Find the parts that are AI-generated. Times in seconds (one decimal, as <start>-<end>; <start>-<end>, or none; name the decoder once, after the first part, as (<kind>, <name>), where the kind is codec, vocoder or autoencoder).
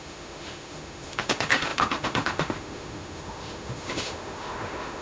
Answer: 0.0-5.0 (autoencoder, DAC-VAE)